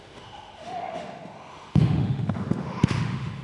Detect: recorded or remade remade